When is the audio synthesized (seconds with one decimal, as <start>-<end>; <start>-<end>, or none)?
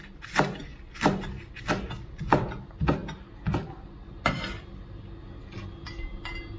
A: none